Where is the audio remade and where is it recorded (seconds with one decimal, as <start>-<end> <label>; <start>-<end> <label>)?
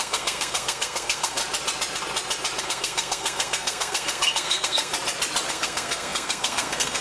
0.0-1.4 remade; 1.4-2.6 recorded; 2.6-4.9 remade; 4.9-5.5 recorded; 5.5-7.0 remade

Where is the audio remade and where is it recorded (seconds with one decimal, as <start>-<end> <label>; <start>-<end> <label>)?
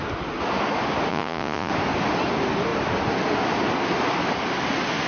0.0-1.1 recorded; 1.1-1.7 remade; 1.7-5.1 recorded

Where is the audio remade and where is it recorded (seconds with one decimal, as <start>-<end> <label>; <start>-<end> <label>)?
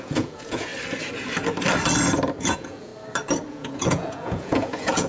0.0-0.7 remade; 0.7-2.4 recorded; 2.4-2.9 remade; 2.9-3.5 recorded; 3.5-5.1 remade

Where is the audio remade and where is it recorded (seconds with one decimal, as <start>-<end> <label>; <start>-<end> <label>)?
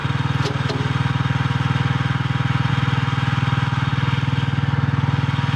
0.0-5.6 recorded